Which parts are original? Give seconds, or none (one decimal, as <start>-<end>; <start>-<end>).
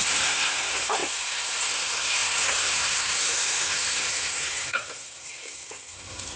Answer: none